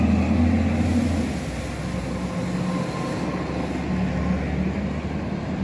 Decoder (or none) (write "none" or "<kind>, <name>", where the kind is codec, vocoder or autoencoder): none